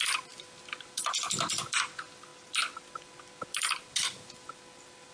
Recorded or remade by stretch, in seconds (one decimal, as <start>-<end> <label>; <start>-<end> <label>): 0.0-5.1 recorded